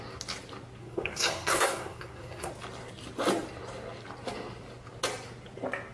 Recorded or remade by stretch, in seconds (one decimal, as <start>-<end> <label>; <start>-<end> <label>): 0.0-0.8 recorded; 0.8-2.5 remade; 2.5-5.9 recorded